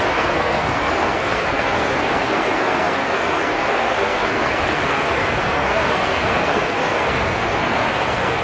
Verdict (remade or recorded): remade